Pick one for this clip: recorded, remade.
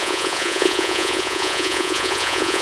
remade